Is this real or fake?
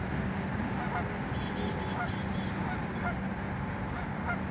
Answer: real